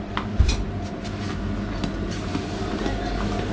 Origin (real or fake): real